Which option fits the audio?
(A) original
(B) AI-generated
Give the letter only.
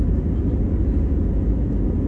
A